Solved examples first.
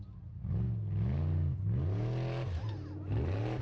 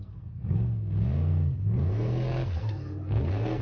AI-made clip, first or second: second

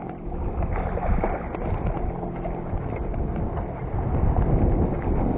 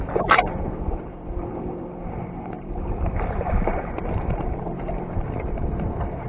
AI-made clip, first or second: second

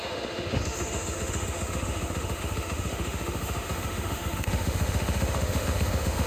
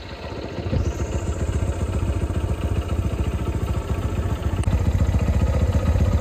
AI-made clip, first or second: first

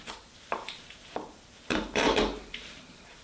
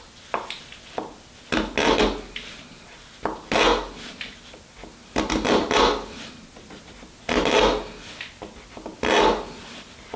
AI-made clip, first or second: first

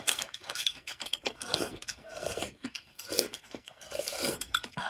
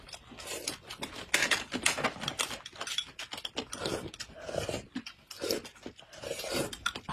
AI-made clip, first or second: first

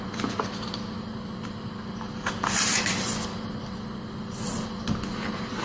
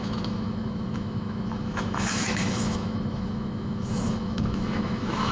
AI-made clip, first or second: second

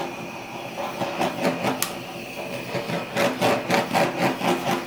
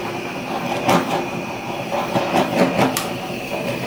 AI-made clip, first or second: second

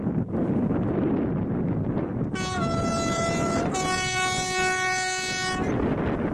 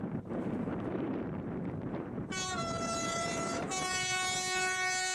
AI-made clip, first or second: second